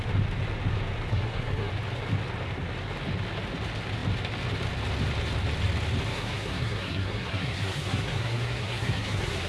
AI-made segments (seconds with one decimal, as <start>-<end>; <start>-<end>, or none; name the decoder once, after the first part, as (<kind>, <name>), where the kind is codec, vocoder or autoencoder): 1.1-1.7 (codec, SNAC); 6.1-9.5